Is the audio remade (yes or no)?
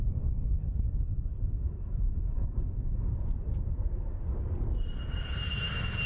yes